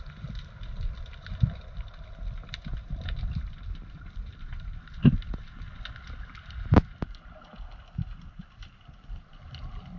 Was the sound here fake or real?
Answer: real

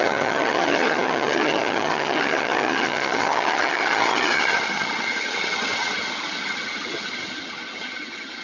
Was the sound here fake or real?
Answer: fake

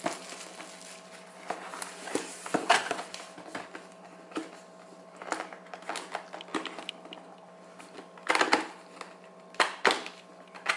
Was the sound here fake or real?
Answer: real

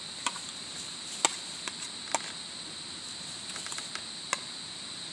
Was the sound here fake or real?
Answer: real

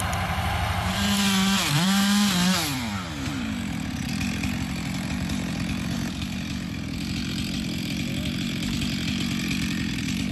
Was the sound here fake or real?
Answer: fake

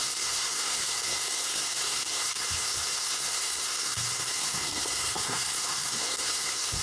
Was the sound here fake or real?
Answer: fake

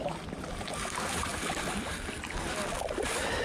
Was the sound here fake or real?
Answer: real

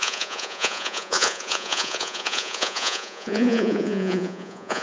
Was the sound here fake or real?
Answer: fake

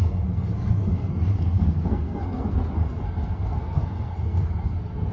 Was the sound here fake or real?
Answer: fake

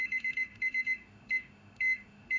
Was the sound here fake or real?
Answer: fake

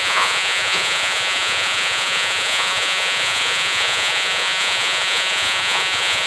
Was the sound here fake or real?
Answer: fake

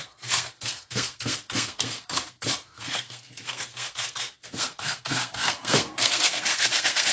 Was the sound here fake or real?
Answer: fake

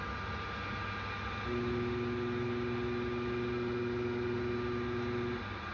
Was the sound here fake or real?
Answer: real